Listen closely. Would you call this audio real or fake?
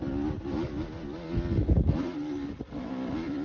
real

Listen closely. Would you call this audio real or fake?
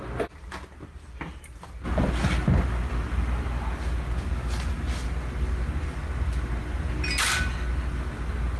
real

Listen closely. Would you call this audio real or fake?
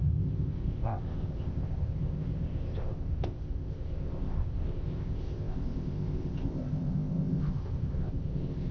fake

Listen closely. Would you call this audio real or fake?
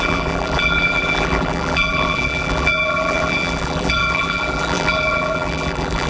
fake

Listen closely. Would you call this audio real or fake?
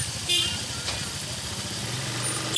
real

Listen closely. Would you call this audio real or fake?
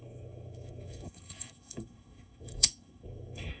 fake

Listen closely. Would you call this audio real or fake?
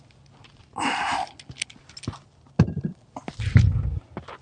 real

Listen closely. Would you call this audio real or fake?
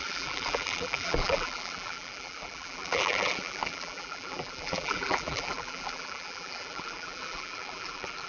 fake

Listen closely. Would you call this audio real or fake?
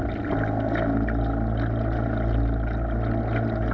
real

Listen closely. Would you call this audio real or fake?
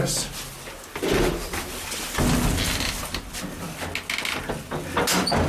real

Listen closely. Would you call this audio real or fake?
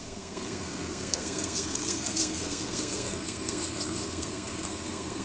fake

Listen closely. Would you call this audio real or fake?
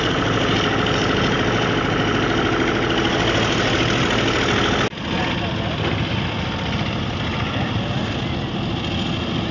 real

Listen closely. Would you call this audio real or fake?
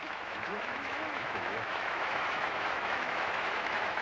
fake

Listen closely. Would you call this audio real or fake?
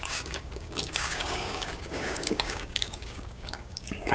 fake